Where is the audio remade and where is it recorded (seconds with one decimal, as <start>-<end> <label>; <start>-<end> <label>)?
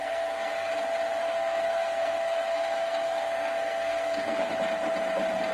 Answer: 0.0-0.7 remade; 0.7-1.2 recorded; 1.2-4.5 remade; 4.5-5.5 recorded